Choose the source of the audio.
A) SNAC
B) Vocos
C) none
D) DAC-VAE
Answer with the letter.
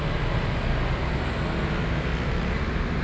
C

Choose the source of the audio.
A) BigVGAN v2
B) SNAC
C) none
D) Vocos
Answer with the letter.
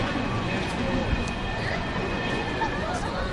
D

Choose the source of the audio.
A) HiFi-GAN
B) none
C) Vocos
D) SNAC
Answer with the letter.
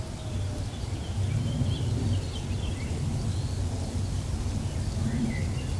B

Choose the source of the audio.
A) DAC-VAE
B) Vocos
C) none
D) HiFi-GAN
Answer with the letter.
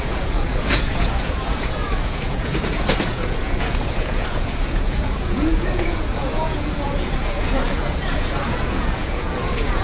B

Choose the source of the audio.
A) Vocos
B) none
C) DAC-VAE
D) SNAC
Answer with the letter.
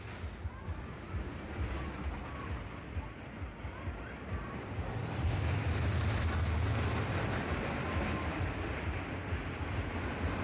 B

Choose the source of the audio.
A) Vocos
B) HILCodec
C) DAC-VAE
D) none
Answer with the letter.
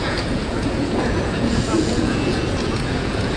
A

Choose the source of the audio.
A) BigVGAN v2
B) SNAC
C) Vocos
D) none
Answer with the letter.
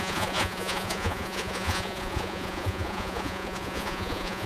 C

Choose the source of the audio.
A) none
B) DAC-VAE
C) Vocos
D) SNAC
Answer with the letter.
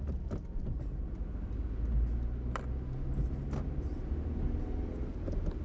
A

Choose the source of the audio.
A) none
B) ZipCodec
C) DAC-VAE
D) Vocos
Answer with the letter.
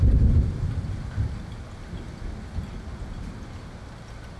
A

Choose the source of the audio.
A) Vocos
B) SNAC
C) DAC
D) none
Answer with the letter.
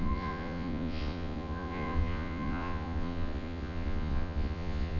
A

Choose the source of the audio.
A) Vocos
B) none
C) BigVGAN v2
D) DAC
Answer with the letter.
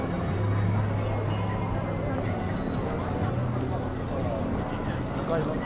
B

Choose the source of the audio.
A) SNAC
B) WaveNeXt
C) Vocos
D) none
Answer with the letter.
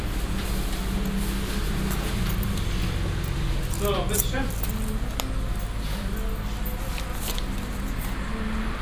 D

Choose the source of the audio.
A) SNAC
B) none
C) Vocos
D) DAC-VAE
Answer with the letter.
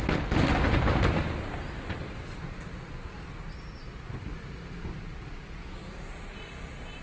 B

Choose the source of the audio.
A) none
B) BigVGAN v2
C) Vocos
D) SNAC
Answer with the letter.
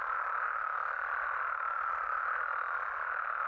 A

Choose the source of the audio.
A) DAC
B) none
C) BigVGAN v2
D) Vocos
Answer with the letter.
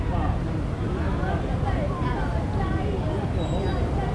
B